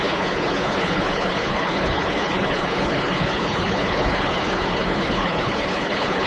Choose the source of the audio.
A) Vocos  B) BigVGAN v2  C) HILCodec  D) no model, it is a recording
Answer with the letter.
C